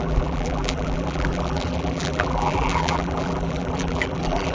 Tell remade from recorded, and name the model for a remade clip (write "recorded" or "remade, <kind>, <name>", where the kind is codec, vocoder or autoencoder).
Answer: remade, vocoder, BigVGAN v2